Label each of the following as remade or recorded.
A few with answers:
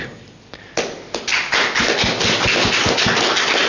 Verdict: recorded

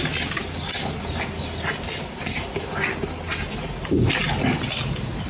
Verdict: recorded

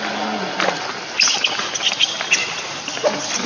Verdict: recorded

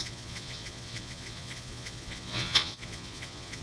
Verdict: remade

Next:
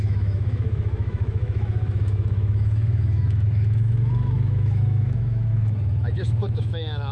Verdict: remade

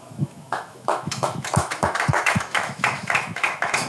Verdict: remade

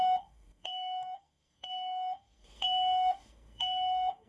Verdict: remade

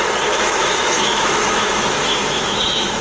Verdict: remade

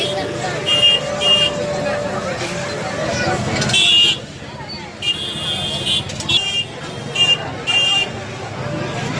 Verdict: recorded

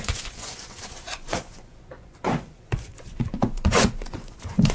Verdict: remade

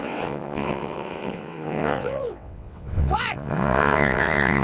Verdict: remade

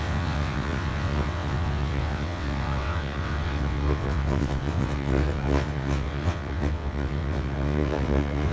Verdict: remade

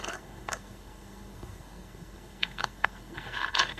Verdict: remade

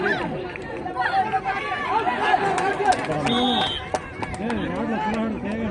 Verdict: recorded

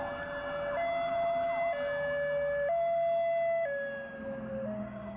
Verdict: recorded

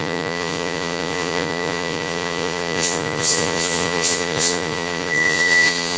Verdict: remade